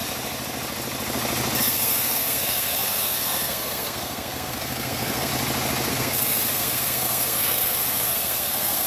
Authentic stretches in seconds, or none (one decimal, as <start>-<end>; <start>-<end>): 0.0-1.6; 5.3-5.9